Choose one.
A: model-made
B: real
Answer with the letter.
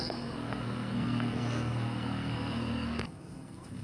A